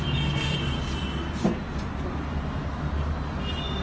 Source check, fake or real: real